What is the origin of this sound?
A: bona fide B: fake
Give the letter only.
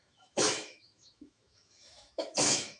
B